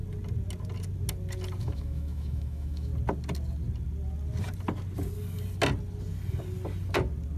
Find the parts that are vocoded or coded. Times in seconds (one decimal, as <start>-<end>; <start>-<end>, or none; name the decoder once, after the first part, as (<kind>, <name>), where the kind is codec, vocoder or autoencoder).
1.6-2.9 (autoencoder, DAC-VAE)